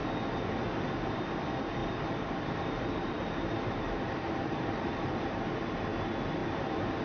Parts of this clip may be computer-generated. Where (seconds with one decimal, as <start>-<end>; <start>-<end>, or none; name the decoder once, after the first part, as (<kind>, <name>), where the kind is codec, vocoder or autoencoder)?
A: 1.8-5.5 (vocoder, BigVGAN v2); 6.4-7.0